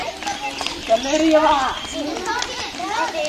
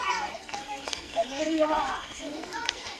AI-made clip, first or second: second